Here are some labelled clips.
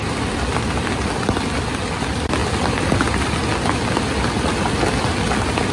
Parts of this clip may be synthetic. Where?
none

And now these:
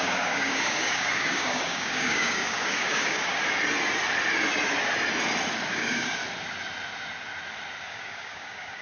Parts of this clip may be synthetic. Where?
0.0-3.4 (codec, DAC); 5.7-6.2; 7.8-8.8